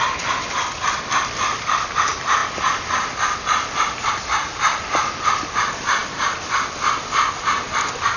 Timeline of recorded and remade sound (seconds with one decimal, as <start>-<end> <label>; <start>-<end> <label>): 0.0-8.2 recorded